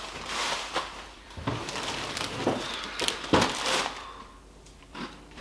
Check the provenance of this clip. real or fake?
fake